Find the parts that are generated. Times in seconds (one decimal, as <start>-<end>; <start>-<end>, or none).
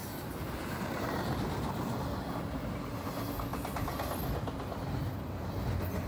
0.0-0.8